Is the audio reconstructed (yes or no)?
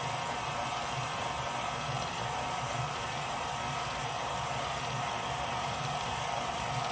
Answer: yes